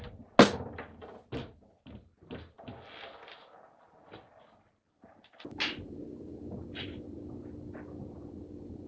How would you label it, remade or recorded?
recorded